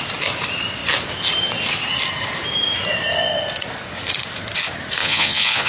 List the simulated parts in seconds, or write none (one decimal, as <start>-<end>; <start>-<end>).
5.0-5.7